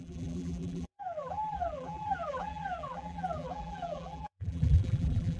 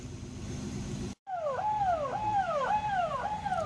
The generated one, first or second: first